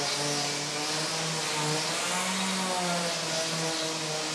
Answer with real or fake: real